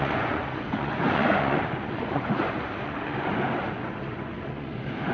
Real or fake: fake